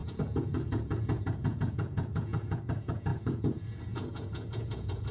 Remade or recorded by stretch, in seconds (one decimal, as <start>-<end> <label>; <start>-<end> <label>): 0.0-5.1 remade